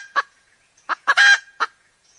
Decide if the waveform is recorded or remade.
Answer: remade